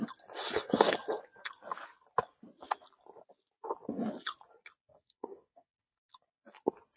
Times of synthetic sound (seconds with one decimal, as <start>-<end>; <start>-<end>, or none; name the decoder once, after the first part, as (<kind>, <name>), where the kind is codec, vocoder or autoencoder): 4.9-6.2 (codec, SNAC)

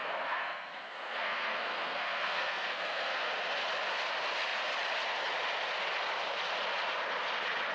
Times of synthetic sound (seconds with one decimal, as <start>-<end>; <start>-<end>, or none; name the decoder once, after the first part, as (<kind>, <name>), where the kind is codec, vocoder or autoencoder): 0.0-3.3 (codec, SNAC)

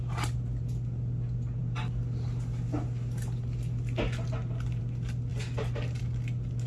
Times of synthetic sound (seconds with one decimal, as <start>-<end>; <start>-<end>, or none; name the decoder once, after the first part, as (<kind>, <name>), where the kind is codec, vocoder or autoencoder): none

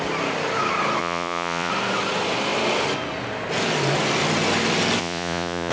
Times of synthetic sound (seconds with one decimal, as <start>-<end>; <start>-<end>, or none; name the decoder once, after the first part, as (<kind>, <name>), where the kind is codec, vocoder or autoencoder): 1.0-1.7 (vocoder, Vocos); 5.0-5.7

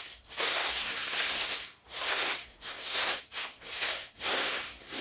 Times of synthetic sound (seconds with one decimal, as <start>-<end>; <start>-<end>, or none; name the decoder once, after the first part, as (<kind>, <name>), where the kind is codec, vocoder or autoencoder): 0.0-5.0 (codec, SNAC)

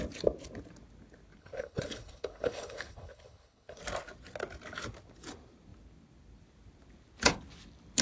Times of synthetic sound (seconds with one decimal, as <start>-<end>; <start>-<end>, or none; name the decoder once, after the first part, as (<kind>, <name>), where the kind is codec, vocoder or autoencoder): 1.4-3.8 (codec, HILCodec)

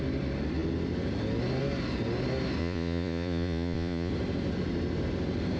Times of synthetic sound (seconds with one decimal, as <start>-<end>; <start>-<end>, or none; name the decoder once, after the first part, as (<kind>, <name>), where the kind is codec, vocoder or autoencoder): 2.6-4.1 (vocoder, Vocos)